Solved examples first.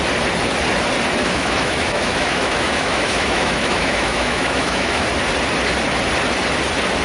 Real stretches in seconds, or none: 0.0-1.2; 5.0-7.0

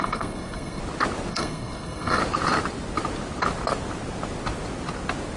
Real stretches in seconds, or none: 0.8-1.3; 2.2-5.4

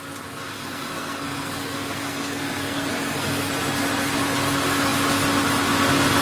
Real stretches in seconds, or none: 0.0-0.5; 3.5-6.2

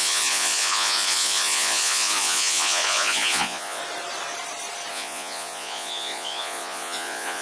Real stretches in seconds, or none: 3.8-4.9